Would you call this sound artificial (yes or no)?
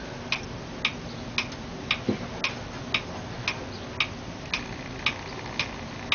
no